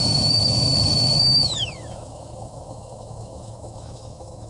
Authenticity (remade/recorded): remade